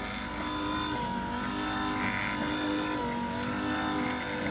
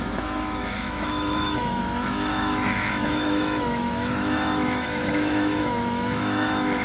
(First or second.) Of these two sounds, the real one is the first